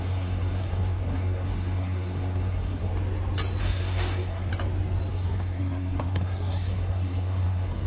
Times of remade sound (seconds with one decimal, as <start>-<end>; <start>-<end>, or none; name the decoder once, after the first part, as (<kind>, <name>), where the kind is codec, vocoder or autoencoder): 0.0-2.9 (codec, SNAC); 3.6-4.5; 5.1-7.9